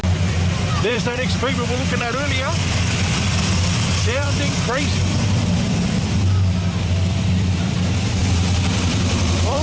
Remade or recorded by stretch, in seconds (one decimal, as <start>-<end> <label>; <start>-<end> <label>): 0.0-9.6 remade